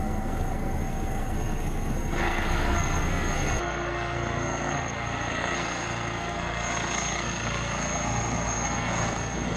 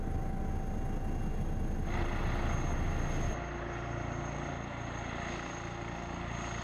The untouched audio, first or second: second